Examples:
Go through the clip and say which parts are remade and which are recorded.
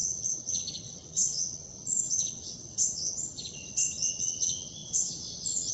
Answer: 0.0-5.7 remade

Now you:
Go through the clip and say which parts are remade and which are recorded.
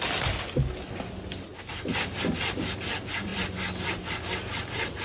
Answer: 0.0-5.0 recorded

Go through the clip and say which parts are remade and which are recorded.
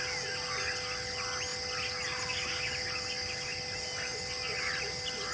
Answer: 0.0-5.3 recorded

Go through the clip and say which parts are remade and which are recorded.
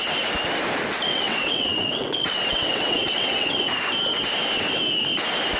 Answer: 0.0-1.1 recorded; 1.1-3.7 remade; 3.7-5.6 recorded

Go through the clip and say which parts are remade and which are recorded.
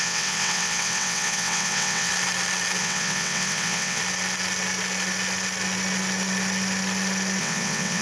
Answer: 0.0-2.1 remade; 2.1-2.8 recorded; 2.8-4.0 remade; 4.0-7.4 recorded; 7.4-8.0 remade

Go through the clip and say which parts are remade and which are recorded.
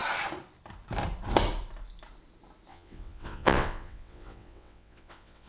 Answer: 0.0-2.7 recorded; 2.7-5.5 remade